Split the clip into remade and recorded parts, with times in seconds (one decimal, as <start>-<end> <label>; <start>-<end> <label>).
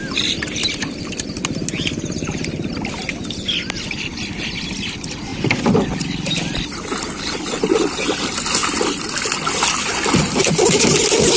0.0-11.4 recorded